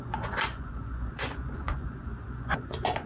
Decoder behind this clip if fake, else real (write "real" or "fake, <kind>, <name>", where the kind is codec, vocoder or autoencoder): fake, vocoder, Vocos